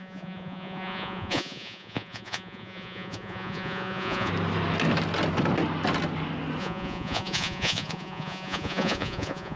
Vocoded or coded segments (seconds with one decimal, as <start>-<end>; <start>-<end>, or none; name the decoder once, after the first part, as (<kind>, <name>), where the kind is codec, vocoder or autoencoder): 0.0-4.3 (vocoder, Vocos); 6.6-9.6

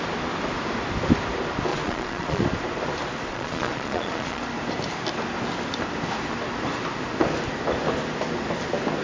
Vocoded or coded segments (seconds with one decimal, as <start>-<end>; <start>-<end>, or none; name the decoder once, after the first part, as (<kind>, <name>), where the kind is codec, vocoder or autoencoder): 1.7-2.4 (vocoder, Vocos); 3.3-4.4

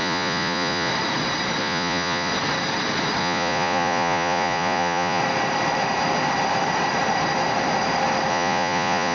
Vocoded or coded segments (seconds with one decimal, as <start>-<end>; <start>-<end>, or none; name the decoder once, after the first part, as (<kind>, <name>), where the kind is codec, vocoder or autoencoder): 0.0-0.9 (vocoder, Vocos); 1.6-2.3; 3.2-5.2; 8.3-9.1

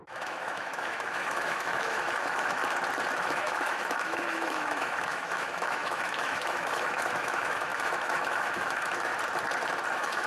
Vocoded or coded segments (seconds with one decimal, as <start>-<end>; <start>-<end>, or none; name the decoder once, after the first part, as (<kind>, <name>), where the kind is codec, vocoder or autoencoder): 0.0-2.6 (autoencoder, DAC-VAE); 3.2-9.1; 9.9-10.3

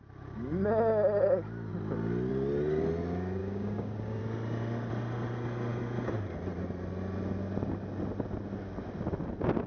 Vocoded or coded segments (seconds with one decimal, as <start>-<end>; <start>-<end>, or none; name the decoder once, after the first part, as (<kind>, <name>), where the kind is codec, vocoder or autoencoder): 3.4-4.2 (codec, DAC)

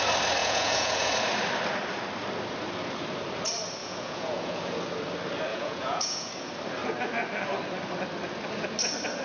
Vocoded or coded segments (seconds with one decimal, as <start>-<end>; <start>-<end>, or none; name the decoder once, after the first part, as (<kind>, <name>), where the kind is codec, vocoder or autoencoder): 0.4-1.1 (vocoder, Vocos); 3.8-4.8; 5.5-6.3

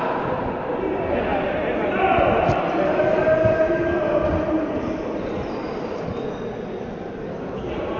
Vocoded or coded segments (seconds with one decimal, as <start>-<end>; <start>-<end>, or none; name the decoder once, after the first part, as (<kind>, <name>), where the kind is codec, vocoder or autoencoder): none